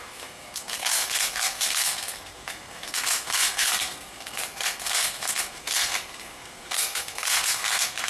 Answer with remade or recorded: remade